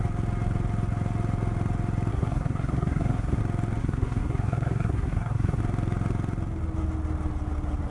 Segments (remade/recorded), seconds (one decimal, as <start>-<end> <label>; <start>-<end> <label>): 0.0-2.1 recorded; 2.1-3.4 remade; 3.4-3.8 recorded; 3.8-5.6 remade; 5.6-7.9 recorded